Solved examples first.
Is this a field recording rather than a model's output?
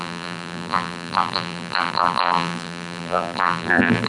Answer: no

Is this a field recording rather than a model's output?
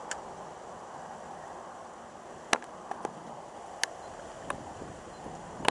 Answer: yes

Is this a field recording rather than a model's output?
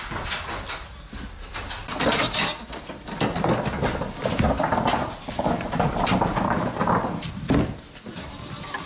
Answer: yes